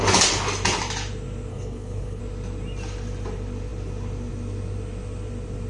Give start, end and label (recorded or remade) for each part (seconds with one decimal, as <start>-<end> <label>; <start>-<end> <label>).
0.0-1.5 recorded; 1.5-2.2 remade; 2.2-5.7 recorded